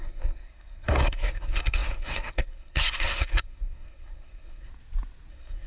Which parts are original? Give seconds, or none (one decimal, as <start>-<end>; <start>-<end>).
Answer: 4.7-5.3